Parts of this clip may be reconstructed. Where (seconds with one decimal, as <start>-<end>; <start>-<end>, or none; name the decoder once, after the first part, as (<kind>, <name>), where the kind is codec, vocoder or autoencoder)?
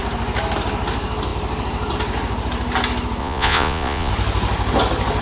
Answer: 3.2-4.1 (vocoder, Vocos)